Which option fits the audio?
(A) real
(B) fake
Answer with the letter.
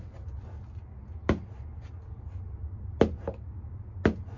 A